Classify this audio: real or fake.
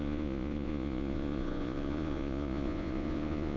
fake